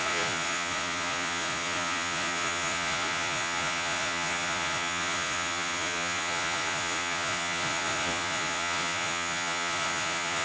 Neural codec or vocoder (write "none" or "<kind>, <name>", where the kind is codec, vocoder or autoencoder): vocoder, Vocos